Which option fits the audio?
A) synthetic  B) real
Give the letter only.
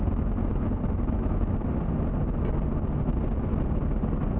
B